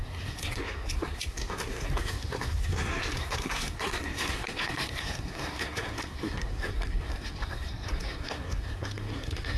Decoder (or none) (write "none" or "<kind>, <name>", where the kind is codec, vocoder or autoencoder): codec, SNAC